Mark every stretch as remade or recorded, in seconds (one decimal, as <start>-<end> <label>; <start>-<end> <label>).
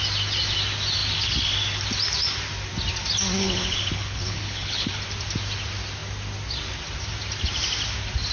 0.0-3.4 recorded; 3.4-5.0 remade; 5.0-8.3 recorded